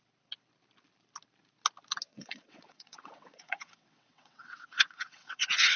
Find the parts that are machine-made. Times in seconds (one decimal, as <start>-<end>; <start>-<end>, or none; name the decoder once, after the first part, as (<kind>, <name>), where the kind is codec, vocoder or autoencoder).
2.1-5.8 (vocoder, WaveNeXt)